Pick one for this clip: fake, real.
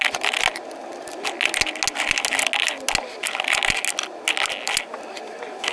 real